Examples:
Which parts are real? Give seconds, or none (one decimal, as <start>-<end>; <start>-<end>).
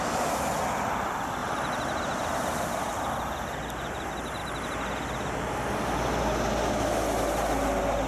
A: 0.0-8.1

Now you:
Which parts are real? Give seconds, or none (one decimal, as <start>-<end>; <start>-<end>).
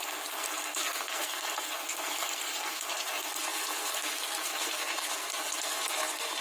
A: none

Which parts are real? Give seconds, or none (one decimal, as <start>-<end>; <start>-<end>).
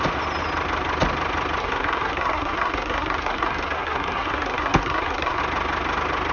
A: 0.0-1.6; 5.4-6.3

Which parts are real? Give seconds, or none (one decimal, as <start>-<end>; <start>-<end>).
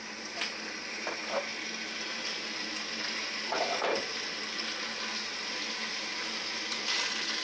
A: 0.0-7.4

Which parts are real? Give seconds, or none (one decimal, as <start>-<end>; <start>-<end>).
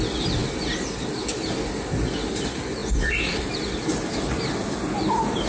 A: 0.0-5.5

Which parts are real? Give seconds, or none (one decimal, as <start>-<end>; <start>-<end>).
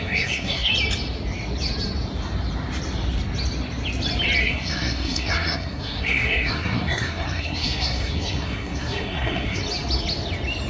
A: 0.7-4.4; 9.6-10.7